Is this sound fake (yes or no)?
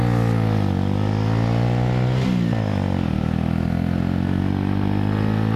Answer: no